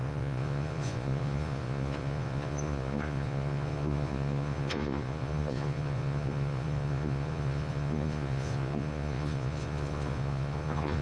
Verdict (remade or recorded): remade